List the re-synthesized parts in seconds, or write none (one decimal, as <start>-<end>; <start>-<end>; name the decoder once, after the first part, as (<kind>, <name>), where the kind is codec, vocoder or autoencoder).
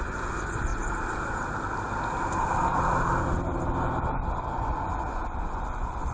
0.0-0.7 (vocoder, Vocos); 4.4-6.1